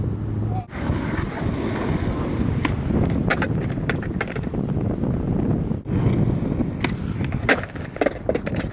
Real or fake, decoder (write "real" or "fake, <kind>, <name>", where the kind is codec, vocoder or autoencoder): real